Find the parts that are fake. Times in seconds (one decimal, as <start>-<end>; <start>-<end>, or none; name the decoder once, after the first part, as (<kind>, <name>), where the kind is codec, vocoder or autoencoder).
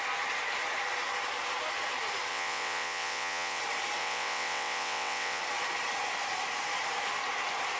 2.3-3.6 (vocoder, WaveNeXt); 4.0-5.4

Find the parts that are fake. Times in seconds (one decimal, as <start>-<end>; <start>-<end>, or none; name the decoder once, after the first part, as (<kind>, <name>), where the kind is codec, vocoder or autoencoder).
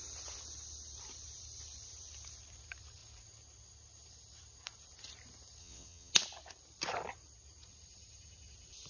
5.6-6.1 (vocoder, WaveNeXt)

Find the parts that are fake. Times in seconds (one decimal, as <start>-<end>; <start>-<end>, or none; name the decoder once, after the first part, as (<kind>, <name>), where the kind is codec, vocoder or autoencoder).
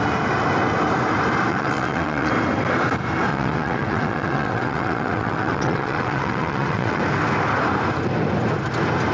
1.5-2.3 (vocoder, WaveNeXt); 3.3-7.0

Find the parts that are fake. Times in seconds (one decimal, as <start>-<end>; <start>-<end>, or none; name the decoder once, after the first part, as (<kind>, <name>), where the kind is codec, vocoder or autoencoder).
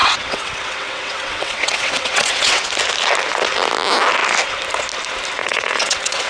0.0-2.7 (vocoder, WaveNeXt); 5.4-6.3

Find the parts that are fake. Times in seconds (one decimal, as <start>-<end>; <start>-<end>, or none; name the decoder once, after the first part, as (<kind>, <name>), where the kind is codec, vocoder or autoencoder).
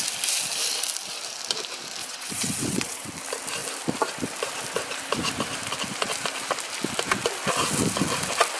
2.0-3.1 (vocoder, WaveNeXt)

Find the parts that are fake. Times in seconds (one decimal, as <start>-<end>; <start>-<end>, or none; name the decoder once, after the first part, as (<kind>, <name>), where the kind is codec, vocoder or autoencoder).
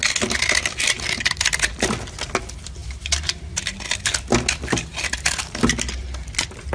none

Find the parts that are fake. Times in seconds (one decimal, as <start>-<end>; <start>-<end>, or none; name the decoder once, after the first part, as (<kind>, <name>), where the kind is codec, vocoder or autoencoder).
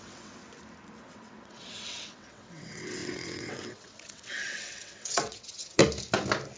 0.0-0.4 (vocoder, WaveNeXt); 1.0-5.8